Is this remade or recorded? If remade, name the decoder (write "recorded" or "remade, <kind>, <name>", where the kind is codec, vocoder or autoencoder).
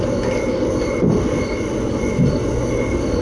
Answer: recorded